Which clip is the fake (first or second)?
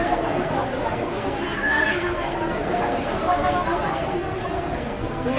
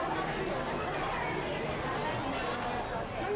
first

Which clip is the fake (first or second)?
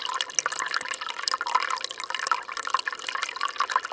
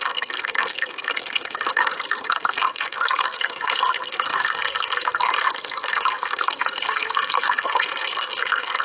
second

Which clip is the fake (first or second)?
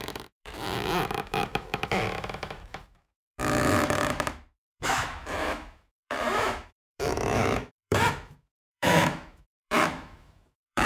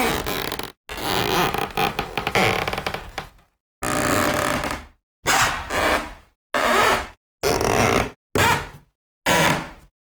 first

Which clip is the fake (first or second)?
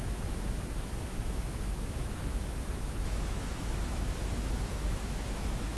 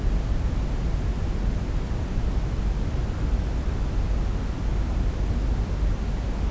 first